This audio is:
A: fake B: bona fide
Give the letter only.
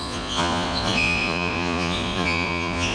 A